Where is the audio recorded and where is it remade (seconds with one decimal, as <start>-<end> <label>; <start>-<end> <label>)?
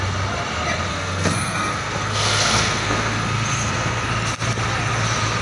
0.0-0.9 recorded; 0.9-4.1 remade; 4.1-5.4 recorded